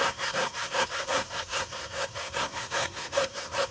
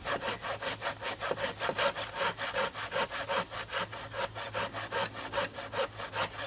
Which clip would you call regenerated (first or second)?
first